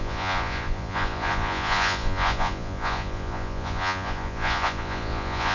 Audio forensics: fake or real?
fake